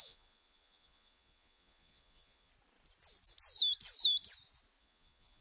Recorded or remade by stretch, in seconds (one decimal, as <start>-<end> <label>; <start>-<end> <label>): 0.0-2.5 remade; 2.5-4.8 recorded; 4.8-5.4 remade